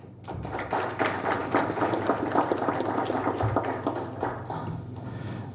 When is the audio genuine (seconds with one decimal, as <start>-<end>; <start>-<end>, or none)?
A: 0.0-5.5